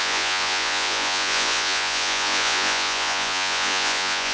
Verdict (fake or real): fake